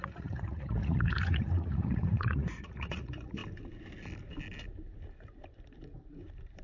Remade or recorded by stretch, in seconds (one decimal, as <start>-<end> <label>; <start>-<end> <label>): 0.0-3.4 remade; 3.4-6.6 recorded

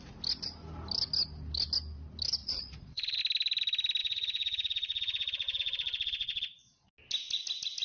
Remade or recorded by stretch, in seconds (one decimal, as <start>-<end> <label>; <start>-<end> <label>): 0.0-2.4 recorded; 2.4-3.2 remade; 3.2-4.0 recorded; 4.0-6.9 remade; 6.9-7.8 recorded

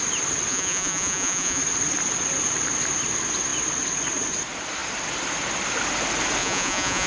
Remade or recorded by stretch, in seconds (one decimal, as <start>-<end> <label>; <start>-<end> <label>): 0.0-0.5 recorded; 0.5-1.6 remade; 1.6-6.4 recorded; 6.4-7.1 remade